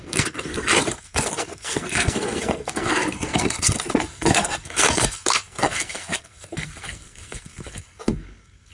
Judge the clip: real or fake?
fake